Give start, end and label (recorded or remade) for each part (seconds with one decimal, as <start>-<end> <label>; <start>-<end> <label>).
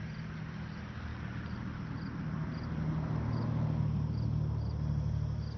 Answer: 0.0-5.6 recorded